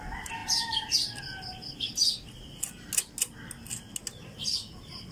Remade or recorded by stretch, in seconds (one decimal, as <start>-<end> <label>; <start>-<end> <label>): 0.0-5.1 recorded